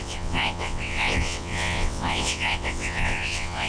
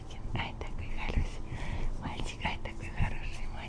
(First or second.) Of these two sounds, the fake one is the first